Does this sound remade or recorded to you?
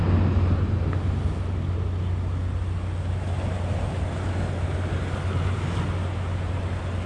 recorded